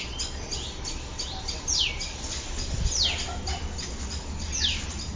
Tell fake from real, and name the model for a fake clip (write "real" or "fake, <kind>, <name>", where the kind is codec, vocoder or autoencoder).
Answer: real